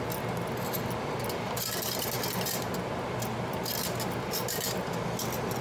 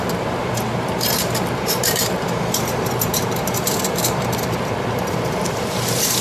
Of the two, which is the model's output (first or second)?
second